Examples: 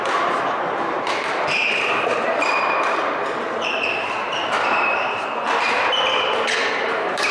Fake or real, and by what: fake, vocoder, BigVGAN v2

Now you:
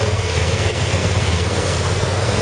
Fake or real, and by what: fake, codec, SNAC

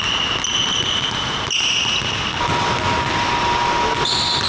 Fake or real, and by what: real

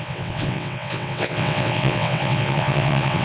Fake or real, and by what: fake, vocoder, WaveNeXt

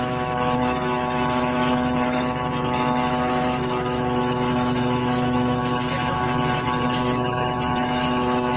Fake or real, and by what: fake, autoencoder, DAC-VAE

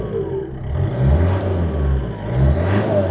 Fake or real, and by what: real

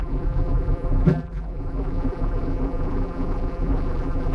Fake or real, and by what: fake, vocoder, BigVGAN v2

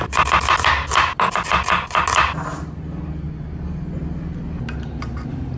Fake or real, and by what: real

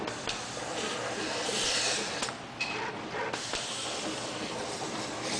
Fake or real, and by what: fake, vocoder, BigVGAN v2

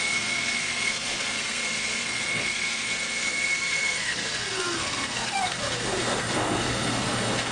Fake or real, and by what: fake, codec, SNAC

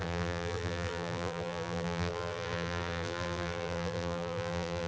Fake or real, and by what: fake, vocoder, BigVGAN v2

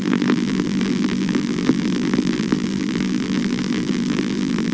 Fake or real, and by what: fake, vocoder, BigVGAN v2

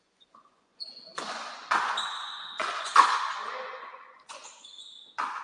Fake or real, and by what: fake, vocoder, Vocos